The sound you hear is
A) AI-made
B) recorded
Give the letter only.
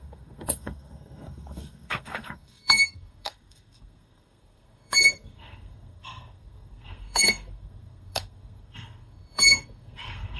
A